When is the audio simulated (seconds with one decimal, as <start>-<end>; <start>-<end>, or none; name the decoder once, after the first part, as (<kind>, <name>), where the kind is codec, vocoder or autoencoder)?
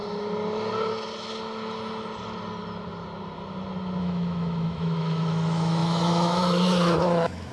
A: 4.0-7.5 (autoencoder, DAC-VAE)